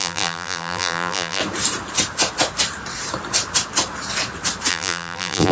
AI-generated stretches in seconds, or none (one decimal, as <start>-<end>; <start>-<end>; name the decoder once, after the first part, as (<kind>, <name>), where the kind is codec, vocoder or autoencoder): 0.0-1.4 (vocoder, BigVGAN v2); 4.7-5.5